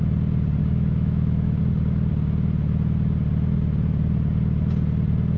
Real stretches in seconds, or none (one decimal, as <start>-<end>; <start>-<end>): 0.0-0.6; 1.6-5.4

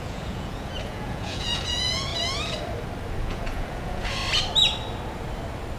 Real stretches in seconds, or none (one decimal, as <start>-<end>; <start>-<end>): 2.1-3.2; 4.2-5.8

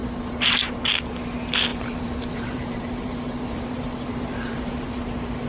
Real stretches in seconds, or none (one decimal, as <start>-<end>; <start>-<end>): 0.0-1.7; 5.0-5.5

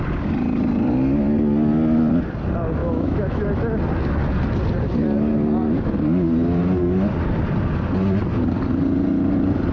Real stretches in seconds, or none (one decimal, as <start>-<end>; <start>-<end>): 0.0-2.8; 3.4-9.7

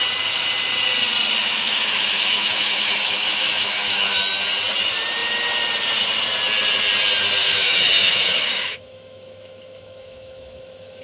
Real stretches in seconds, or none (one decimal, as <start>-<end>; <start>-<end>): 0.0-1.4; 4.2-7.4